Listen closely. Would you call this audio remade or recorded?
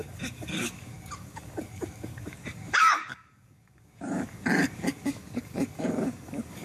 remade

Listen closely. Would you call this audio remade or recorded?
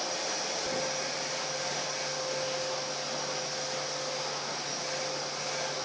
recorded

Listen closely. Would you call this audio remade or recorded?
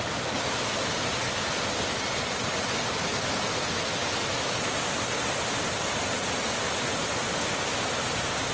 recorded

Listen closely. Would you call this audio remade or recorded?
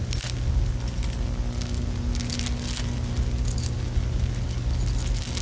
recorded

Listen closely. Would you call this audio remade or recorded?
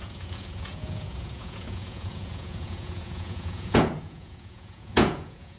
remade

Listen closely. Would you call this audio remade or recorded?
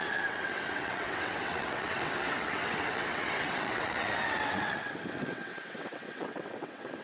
remade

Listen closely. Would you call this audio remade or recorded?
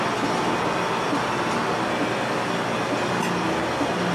recorded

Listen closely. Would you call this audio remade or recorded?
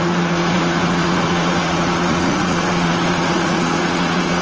remade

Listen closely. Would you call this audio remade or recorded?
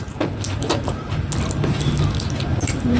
recorded